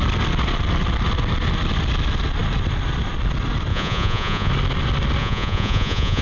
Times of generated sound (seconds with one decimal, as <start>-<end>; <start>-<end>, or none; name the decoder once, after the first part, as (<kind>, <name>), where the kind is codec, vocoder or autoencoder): 3.7-4.5 (vocoder, Vocos); 5.2-6.2